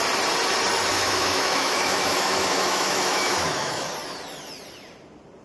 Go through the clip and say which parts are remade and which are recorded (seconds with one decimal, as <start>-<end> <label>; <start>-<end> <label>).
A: 0.0-0.9 recorded; 0.9-3.9 remade; 3.9-5.4 recorded